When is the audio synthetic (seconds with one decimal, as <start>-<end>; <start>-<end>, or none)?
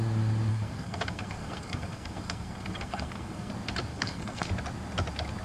0.5-3.5; 3.9-4.5